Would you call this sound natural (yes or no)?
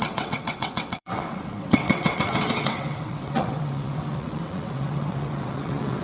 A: no